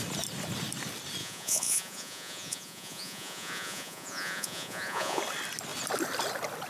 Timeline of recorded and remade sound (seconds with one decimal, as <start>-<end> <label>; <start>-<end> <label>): 0.0-1.2 recorded; 1.2-5.2 remade; 5.2-6.7 recorded